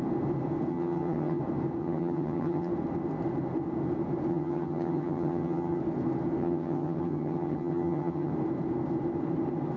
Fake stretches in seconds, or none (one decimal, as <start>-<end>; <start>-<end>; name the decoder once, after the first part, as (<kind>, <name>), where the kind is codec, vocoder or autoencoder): 0.7-1.4 (vocoder, HiFi-GAN); 1.8-2.7; 4.3-5.8; 6.4-8.3